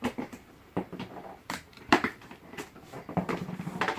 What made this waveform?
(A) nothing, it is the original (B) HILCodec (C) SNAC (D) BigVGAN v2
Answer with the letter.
D